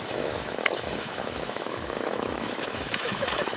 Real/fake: fake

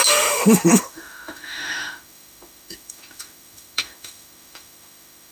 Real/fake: fake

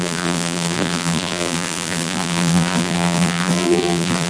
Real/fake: fake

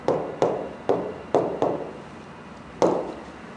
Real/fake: real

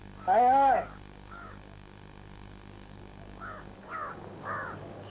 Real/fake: fake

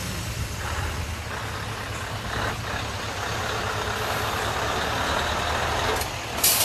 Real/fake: real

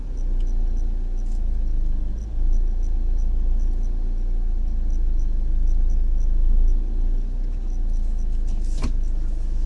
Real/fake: real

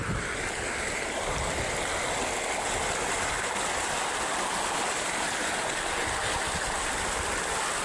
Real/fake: real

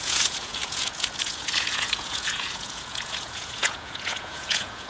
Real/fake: fake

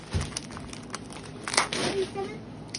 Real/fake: real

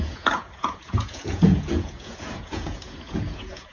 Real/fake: fake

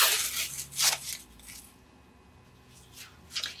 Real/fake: real